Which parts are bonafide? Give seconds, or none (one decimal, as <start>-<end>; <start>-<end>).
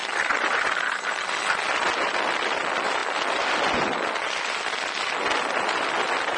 0.0-6.4